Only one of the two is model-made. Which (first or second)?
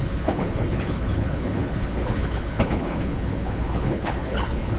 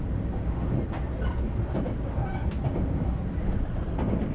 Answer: first